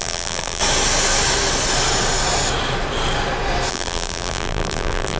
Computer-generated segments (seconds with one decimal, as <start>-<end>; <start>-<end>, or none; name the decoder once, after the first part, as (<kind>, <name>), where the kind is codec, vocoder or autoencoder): 0.0-0.6 (vocoder, BigVGAN v2); 3.7-5.2